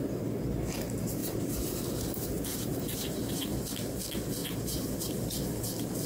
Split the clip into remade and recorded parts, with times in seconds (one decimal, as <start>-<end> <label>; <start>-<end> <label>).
0.0-1.2 recorded; 1.2-3.6 remade; 3.6-4.4 recorded; 4.4-5.1 remade; 5.1-6.1 recorded

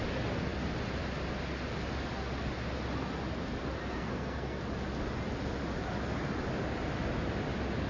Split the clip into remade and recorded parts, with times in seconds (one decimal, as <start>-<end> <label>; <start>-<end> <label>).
0.0-3.8 recorded; 3.8-4.6 remade; 4.6-7.9 recorded

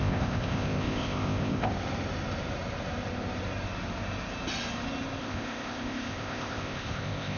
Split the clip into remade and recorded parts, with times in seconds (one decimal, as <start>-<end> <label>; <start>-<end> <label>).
0.0-1.7 remade; 1.7-5.2 recorded; 5.2-7.4 remade

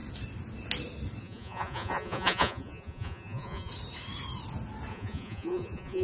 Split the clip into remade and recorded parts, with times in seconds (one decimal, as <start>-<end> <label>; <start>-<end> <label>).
0.0-1.2 recorded; 1.2-3.7 remade; 3.7-4.9 recorded; 4.9-6.0 remade

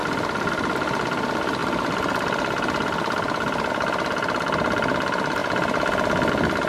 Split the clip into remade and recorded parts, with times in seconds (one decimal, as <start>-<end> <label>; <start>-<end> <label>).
0.0-6.7 recorded

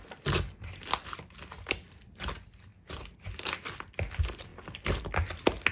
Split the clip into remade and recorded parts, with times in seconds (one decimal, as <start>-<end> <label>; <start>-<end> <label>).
0.0-5.7 recorded

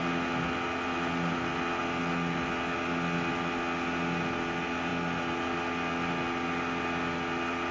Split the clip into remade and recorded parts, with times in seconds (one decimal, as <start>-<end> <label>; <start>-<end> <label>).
0.0-7.7 recorded

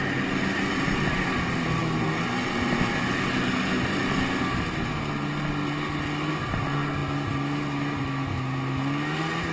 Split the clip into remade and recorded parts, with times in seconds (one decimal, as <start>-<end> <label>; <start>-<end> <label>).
0.0-9.5 recorded